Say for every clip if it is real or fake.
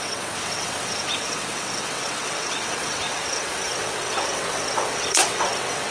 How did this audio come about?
fake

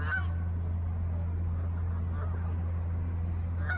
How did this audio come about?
real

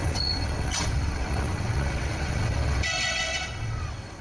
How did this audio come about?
fake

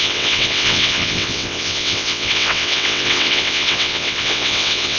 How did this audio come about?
fake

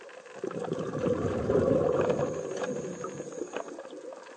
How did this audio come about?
real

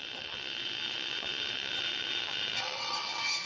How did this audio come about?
fake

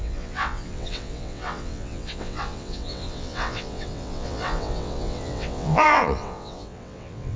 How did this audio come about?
fake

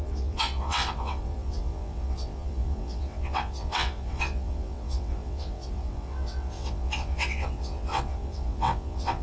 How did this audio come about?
fake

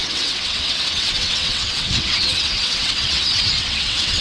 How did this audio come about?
fake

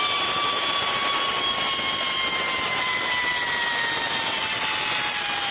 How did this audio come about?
real